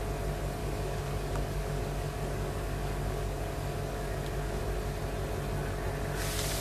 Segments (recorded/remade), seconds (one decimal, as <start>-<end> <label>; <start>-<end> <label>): 0.0-0.6 recorded; 0.6-4.6 remade; 4.6-6.6 recorded

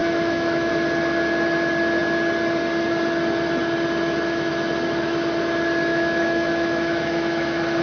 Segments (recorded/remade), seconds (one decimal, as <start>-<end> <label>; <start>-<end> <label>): 0.0-0.7 remade; 0.7-5.9 recorded; 5.9-7.8 remade